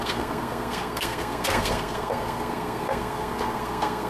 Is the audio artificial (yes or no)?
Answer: yes